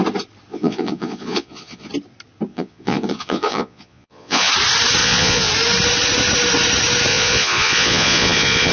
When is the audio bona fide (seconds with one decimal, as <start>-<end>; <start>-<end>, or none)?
0.0-0.5; 1.9-2.5; 4.5-5.0; 5.5-7.1